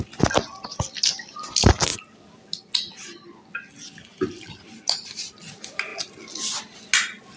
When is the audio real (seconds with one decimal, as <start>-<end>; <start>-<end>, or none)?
0.0-7.4